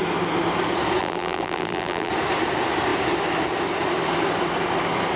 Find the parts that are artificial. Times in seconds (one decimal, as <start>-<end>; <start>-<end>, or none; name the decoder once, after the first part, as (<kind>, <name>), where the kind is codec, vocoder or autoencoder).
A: 1.0-2.1 (vocoder, BigVGAN v2)